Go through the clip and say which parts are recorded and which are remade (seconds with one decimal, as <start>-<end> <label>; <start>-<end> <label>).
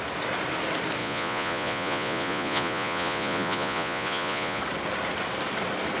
0.0-1.0 recorded; 1.0-4.6 remade; 4.6-6.0 recorded